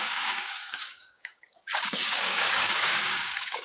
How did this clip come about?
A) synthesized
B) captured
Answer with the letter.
A